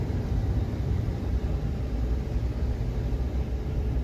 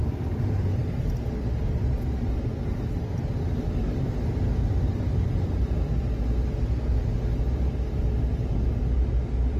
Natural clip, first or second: second